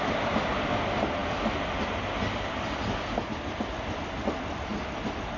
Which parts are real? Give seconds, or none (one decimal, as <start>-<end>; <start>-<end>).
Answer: 0.0-5.4